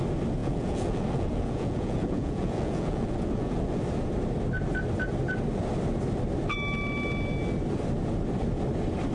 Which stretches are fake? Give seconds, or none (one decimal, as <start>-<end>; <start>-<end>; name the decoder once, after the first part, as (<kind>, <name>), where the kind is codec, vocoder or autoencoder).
0.4-3.8 (vocoder, Vocos)